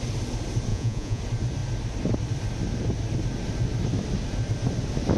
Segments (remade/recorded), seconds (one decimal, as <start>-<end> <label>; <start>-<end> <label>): 0.0-0.7 recorded; 0.7-1.2 remade; 1.2-5.2 recorded